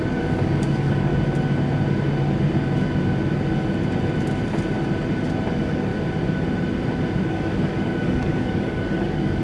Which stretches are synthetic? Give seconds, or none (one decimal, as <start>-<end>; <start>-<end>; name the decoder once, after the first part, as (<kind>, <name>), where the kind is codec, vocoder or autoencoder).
0.0-1.1 (codec, DAC); 5.5-5.9; 7.3-9.4